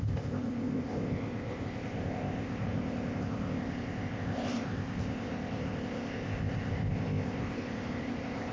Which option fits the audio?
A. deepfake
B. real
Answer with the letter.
A